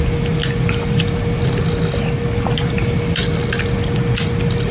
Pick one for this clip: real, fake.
fake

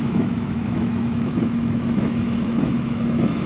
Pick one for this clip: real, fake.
fake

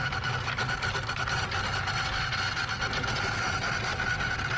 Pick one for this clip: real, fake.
real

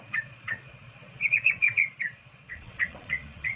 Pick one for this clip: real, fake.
fake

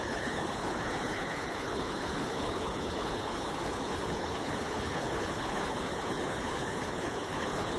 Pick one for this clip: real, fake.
fake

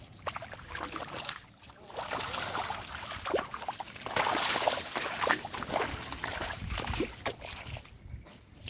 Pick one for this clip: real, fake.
real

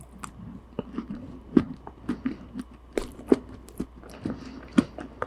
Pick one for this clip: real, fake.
real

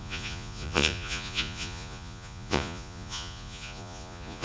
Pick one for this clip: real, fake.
fake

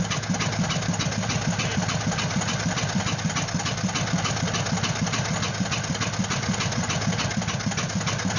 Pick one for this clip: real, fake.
real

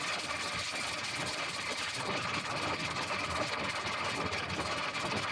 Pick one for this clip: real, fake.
real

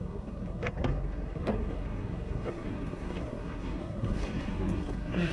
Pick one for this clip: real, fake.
fake